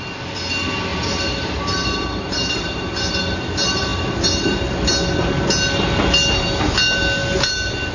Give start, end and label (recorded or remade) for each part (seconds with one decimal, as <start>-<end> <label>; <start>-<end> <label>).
0.0-0.9 recorded; 0.9-3.2 remade; 3.2-7.9 recorded